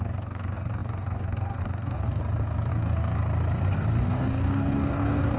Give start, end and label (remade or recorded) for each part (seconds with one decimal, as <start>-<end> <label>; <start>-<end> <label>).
0.0-2.2 remade; 2.2-2.7 recorded; 2.7-3.2 remade; 3.2-4.0 recorded; 4.0-5.4 remade